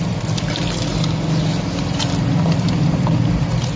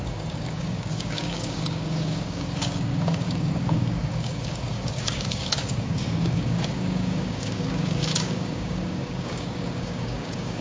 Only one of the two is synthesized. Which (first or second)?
second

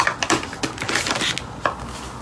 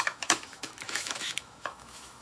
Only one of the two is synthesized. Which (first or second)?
second